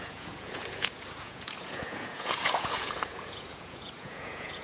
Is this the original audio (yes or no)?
no